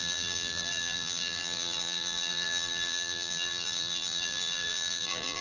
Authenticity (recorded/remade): remade